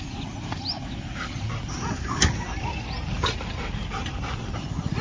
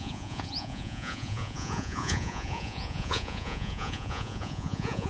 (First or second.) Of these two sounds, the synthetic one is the second